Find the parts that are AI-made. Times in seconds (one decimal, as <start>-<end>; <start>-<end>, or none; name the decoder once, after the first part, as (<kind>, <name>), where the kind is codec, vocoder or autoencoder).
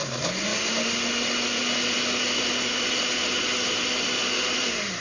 none